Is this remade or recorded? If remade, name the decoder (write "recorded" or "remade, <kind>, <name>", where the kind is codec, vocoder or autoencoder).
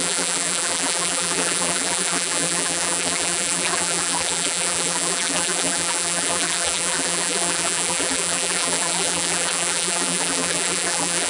remade, vocoder, BigVGAN v2